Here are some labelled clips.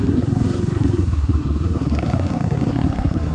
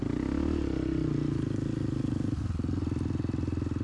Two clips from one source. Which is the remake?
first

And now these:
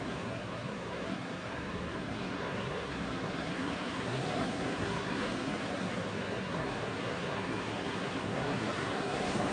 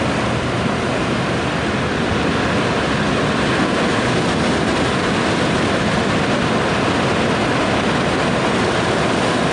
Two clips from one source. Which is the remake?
first